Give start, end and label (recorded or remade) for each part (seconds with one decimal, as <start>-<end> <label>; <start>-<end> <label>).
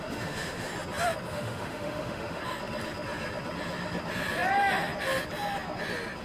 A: 0.0-0.7 remade; 0.7-1.3 recorded; 1.3-2.4 remade; 2.4-6.2 recorded